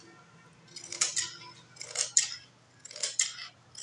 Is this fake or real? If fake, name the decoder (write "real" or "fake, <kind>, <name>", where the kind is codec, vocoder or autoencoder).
real